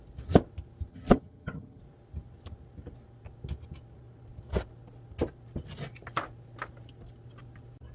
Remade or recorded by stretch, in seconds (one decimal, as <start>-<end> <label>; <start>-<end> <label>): 0.0-0.9 recorded; 0.9-1.8 remade; 1.8-7.9 recorded